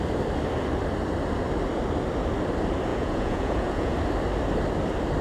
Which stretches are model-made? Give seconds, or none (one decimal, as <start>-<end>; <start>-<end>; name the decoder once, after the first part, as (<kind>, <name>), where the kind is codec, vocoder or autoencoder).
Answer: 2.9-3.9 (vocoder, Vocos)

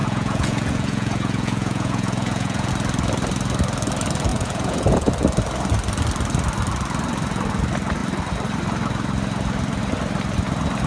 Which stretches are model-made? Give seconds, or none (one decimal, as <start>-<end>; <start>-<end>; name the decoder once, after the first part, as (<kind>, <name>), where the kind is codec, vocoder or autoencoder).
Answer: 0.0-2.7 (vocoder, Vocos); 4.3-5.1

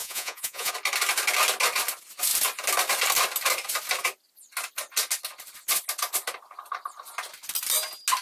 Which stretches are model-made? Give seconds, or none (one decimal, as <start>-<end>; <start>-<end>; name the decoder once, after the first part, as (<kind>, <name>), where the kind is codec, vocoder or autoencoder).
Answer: 0.0-0.7 (vocoder, Vocos)